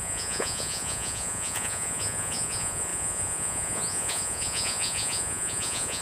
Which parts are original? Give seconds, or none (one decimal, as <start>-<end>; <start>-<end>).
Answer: none